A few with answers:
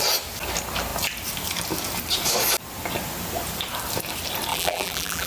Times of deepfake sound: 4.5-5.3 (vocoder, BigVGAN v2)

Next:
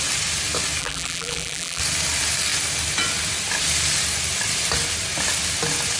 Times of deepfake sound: 0.8-1.8 (vocoder, BigVGAN v2)

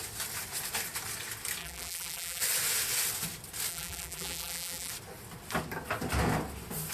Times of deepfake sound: 1.6-2.4 (vocoder, BigVGAN v2); 3.7-4.9

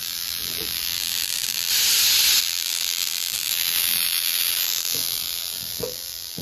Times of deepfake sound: 0.0-1.7 (vocoder, BigVGAN v2); 2.4-6.4

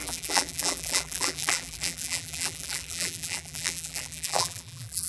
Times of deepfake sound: 0.0-5.1 (vocoder, BigVGAN v2)

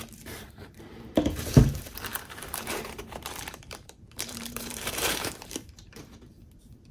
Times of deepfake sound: 0.0-6.9 (vocoder, BigVGAN v2)

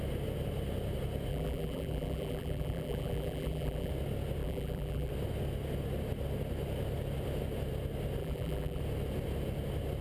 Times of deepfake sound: 1.3-3.9 (vocoder, BigVGAN v2); 4.4-5.1; 8.2-8.8